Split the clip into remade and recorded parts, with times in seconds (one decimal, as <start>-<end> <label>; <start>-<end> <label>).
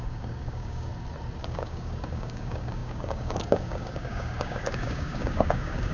0.0-0.9 remade; 0.9-1.4 recorded; 1.4-5.9 remade